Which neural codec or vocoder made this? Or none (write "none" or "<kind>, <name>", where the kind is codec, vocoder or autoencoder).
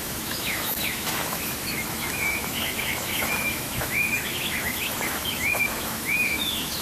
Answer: autoencoder, DAC-VAE